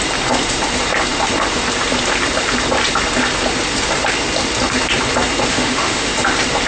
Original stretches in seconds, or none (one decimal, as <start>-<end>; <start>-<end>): 0.0-5.5; 6.1-6.7